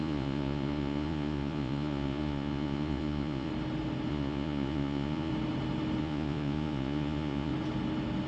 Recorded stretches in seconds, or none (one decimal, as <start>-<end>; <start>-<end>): 3.5-4.1; 5.3-6.0; 7.5-8.3